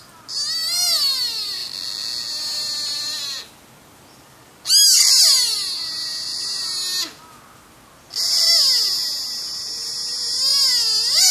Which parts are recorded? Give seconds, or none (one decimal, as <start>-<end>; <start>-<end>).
0.0-11.3